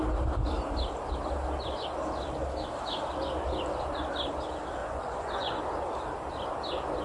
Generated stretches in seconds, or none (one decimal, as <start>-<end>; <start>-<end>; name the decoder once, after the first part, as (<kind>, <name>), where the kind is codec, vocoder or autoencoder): 4.8-5.6 (vocoder, Vocos)